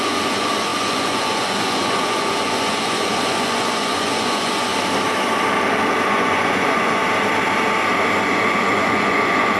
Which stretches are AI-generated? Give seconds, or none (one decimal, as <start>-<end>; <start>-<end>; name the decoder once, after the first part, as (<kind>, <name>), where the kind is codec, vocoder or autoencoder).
0.0-4.7 (vocoder, Vocos); 6.1-7.0; 8.2-9.6